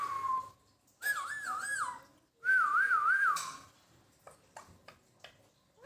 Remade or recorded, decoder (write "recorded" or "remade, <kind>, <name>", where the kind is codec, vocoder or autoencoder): recorded